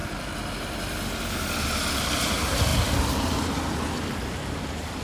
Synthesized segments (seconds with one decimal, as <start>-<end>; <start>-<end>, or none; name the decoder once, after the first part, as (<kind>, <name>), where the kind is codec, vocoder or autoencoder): none